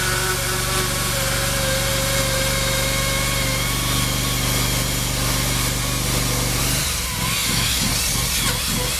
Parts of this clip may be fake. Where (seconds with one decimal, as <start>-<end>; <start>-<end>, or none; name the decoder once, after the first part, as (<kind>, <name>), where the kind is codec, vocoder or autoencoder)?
7.4-7.9 (autoencoder, DAC-VAE)